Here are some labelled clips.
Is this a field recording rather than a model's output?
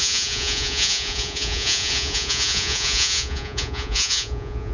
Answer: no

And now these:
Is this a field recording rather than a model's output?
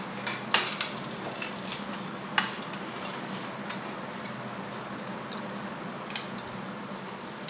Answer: yes